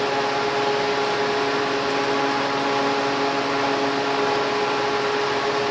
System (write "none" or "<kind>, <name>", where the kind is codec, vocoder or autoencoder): none